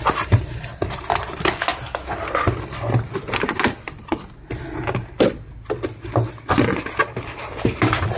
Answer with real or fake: real